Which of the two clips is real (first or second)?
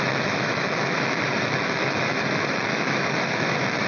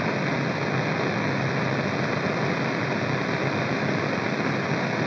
second